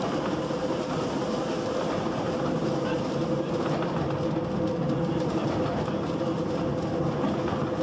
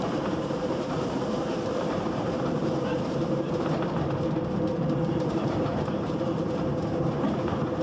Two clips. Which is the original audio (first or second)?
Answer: first